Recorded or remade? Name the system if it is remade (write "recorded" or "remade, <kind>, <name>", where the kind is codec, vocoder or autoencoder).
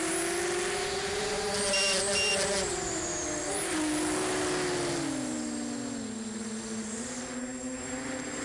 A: recorded